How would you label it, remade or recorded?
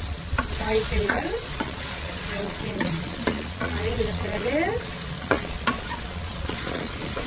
remade